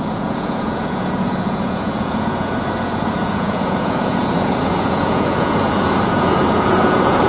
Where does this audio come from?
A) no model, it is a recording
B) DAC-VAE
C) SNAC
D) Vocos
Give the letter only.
D